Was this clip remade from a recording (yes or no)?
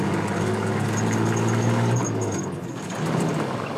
yes